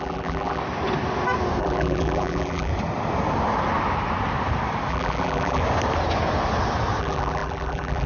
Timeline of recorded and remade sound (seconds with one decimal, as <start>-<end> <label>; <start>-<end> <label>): 0.0-0.6 remade; 0.6-1.6 recorded; 1.6-2.7 remade; 2.7-4.9 recorded; 4.9-5.6 remade; 5.6-7.0 recorded; 7.0-8.1 remade